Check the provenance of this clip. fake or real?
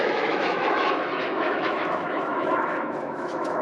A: fake